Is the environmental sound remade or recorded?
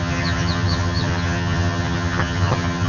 remade